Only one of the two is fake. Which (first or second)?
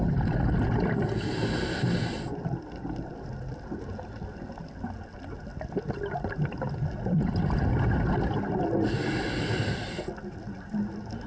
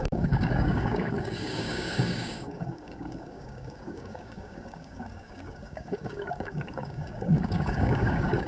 second